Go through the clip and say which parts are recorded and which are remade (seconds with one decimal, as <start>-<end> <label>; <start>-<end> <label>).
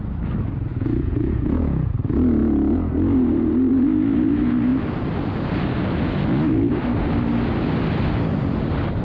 0.0-0.7 recorded; 0.7-1.9 remade; 1.9-9.0 recorded